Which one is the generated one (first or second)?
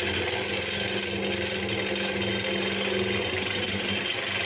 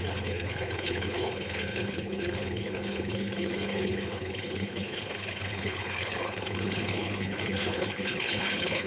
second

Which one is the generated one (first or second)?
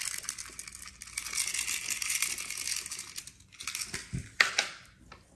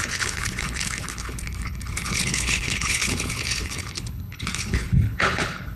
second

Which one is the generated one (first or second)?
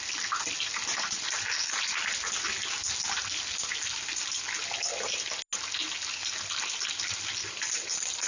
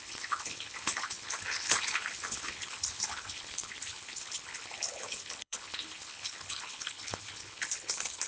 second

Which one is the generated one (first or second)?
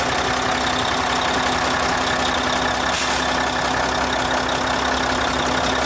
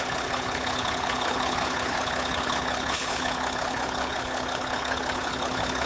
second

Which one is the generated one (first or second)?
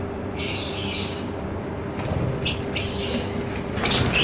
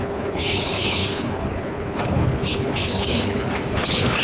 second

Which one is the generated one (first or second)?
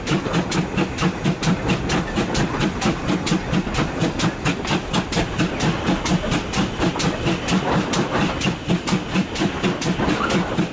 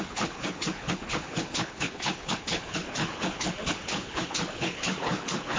second